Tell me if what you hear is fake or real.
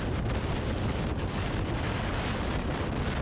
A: real